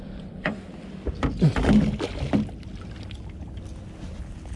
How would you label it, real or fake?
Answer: real